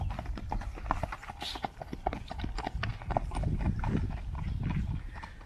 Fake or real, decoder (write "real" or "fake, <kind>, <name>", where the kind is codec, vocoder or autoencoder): real